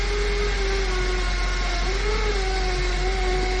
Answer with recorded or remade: recorded